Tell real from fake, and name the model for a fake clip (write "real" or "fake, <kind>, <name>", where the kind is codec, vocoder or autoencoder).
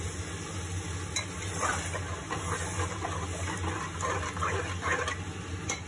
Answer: real